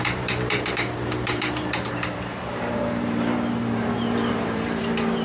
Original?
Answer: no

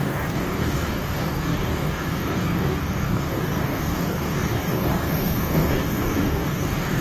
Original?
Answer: no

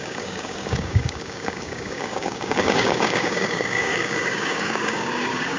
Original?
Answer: no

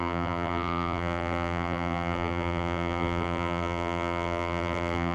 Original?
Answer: no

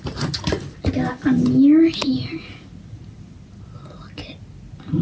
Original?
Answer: yes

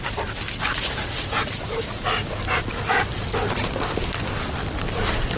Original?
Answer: yes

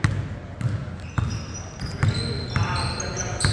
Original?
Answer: yes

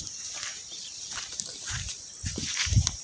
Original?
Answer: yes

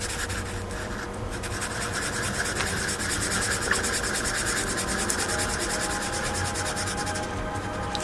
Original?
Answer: yes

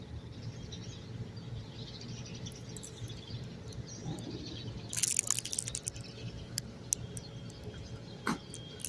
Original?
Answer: yes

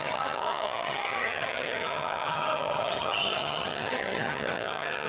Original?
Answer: no